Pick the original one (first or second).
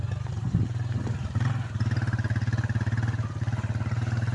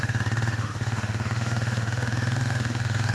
first